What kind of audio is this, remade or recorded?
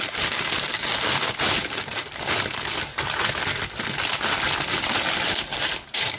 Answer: recorded